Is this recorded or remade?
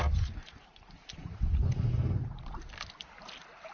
recorded